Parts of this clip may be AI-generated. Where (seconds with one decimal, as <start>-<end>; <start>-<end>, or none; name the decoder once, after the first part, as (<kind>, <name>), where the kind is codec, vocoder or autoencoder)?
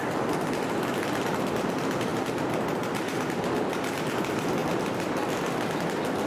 none